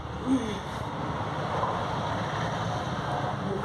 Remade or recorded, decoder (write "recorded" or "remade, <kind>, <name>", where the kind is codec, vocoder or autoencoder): recorded